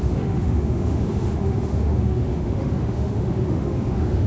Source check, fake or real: fake